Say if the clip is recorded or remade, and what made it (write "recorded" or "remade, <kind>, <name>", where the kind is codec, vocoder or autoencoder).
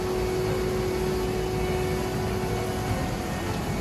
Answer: recorded